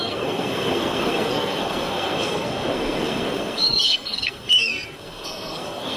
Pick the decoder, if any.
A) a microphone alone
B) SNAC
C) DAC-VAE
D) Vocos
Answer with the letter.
B